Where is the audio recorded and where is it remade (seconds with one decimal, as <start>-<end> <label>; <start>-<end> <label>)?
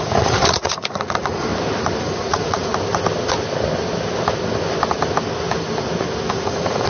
0.0-1.5 remade; 1.5-2.0 recorded; 2.0-2.7 remade; 2.7-6.3 recorded; 6.3-6.9 remade